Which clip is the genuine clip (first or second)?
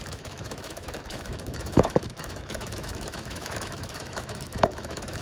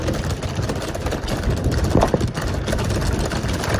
second